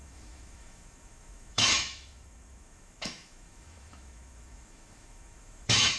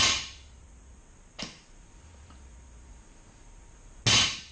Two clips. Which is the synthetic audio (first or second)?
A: first